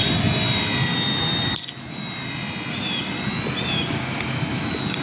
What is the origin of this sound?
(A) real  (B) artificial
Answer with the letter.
A